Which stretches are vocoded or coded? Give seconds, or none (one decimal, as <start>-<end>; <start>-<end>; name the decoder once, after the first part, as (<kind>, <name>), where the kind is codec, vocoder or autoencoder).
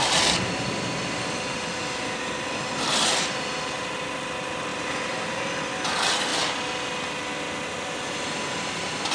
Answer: 1.8-2.6 (vocoder, BigVGAN v2)